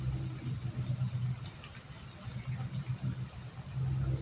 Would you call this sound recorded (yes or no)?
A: yes